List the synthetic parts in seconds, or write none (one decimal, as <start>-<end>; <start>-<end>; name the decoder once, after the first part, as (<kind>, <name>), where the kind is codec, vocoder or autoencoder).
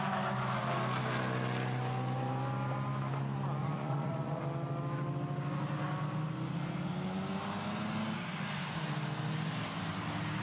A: 3.6-4.4 (vocoder, Vocos)